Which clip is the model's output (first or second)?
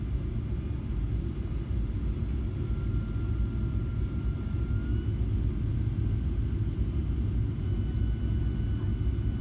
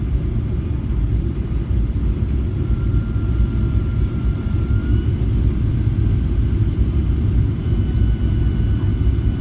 second